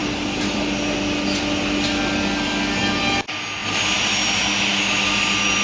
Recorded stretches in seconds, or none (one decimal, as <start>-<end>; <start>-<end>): 0.0-5.6